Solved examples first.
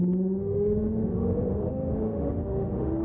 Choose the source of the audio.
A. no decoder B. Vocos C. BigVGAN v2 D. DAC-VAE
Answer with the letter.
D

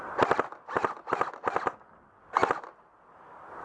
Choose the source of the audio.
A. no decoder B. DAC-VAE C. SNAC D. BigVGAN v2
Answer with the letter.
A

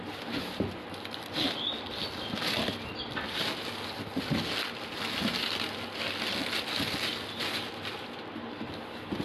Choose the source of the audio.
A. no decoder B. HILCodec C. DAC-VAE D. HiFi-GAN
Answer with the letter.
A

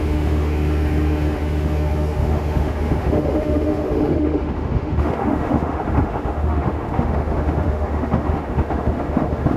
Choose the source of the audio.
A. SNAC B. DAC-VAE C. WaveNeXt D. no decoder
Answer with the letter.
B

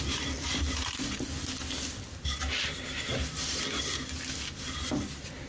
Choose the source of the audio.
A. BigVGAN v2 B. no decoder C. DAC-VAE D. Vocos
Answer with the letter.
B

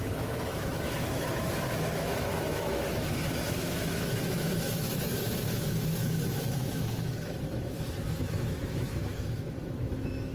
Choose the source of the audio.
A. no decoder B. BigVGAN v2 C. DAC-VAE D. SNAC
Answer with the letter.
C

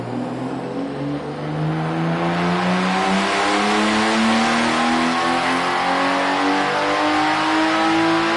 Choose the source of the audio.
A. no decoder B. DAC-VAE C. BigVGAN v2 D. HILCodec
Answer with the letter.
A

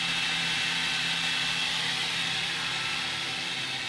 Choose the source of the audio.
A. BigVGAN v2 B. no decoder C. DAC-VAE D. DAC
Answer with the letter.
B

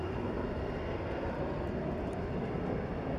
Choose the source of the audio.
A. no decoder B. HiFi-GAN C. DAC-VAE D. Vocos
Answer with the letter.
A